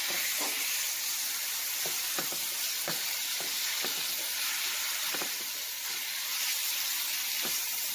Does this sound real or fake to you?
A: real